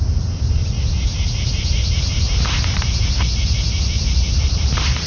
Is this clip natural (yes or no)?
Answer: no